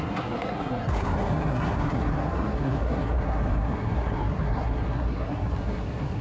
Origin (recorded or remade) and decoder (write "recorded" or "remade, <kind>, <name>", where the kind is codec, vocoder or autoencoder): remade, codec, SNAC